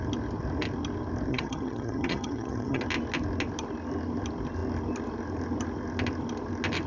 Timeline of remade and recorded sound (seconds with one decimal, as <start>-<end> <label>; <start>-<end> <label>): 0.0-1.3 recorded; 1.3-2.8 remade; 2.8-6.9 recorded